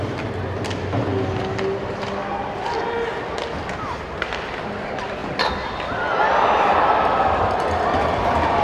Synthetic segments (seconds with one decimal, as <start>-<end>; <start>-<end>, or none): none